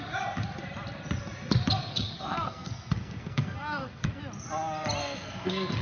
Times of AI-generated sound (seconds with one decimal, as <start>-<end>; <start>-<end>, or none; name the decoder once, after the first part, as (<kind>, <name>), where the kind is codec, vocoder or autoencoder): 1.8-4.2 (codec, SNAC); 5.0-5.8